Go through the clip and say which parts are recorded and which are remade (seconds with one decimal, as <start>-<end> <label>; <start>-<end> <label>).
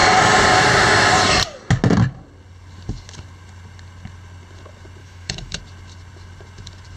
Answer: 0.0-5.0 recorded; 5.0-5.6 remade; 5.6-7.0 recorded